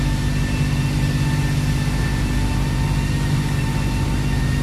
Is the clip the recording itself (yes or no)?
yes